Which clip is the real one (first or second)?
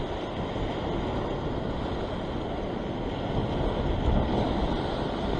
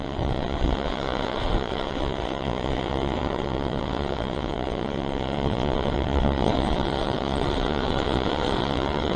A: first